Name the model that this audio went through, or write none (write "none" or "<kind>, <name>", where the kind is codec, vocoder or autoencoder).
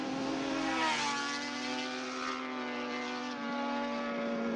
none